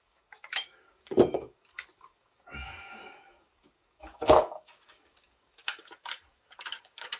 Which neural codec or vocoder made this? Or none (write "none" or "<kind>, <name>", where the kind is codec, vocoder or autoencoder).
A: codec, DAC